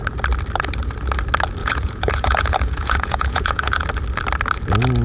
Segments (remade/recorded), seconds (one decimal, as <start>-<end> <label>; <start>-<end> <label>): 0.0-1.6 recorded; 1.6-3.8 remade; 3.8-5.0 recorded